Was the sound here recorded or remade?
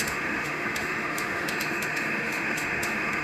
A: remade